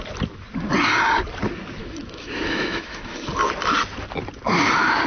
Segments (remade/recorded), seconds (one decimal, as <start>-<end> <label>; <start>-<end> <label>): 0.0-1.8 recorded; 1.8-3.3 remade; 3.3-5.1 recorded